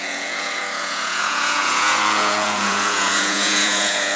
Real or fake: fake